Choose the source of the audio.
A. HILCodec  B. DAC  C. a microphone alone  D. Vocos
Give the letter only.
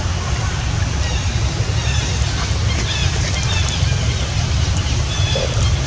C